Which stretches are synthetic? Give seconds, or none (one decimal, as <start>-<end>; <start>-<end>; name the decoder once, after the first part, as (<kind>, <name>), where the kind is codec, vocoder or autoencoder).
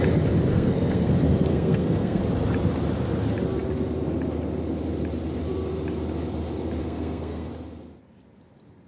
0.5-1.1 (codec, SNAC); 1.5-2.2; 6.8-7.5